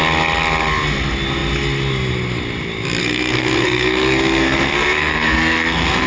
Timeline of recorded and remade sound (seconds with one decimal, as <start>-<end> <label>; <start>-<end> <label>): 0.0-3.0 recorded; 3.0-6.1 remade